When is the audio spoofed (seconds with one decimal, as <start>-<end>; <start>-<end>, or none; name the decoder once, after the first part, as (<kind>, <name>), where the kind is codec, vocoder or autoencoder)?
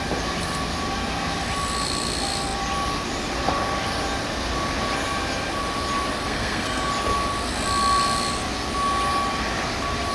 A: 6.2-6.9 (codec, SNAC)